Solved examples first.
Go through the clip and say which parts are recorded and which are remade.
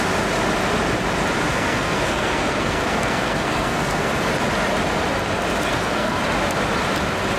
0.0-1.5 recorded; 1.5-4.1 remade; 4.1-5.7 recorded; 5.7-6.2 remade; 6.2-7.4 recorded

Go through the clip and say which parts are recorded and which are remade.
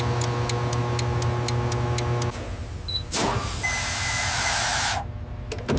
0.0-5.8 recorded